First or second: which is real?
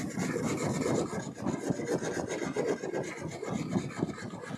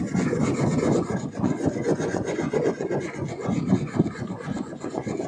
first